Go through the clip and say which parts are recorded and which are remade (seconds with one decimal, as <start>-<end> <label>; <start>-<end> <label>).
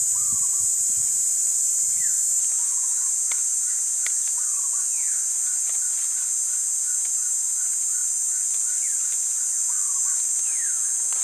0.0-11.2 recorded